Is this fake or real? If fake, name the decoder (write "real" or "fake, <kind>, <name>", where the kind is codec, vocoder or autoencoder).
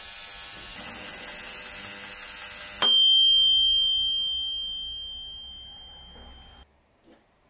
real